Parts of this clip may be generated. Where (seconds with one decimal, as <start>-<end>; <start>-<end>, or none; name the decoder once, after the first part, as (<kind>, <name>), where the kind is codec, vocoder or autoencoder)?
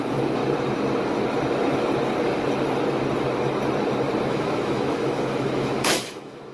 0.0-0.4 (autoencoder, DAC-VAE); 4.3-6.5